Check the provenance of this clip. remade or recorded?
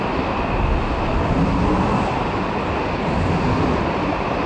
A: recorded